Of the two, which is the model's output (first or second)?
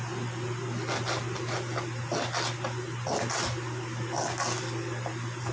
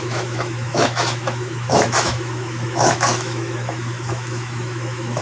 second